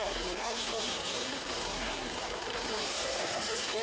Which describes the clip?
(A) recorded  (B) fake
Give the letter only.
B